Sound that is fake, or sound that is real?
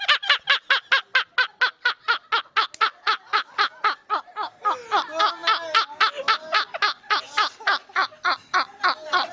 real